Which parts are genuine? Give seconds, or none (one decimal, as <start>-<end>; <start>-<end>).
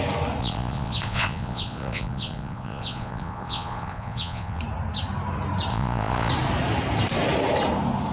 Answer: 0.0-0.4; 4.6-5.7; 6.3-8.1